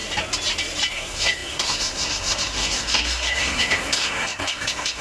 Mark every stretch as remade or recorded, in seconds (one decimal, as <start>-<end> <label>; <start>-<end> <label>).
0.0-0.9 recorded; 0.9-5.0 remade